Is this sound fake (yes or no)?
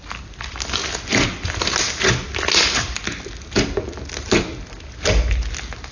no